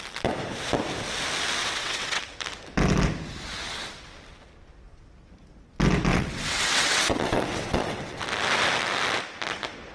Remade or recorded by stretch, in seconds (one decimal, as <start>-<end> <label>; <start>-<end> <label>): 0.0-1.6 recorded; 1.6-2.2 remade; 2.2-6.1 recorded; 6.1-8.2 remade; 8.2-9.9 recorded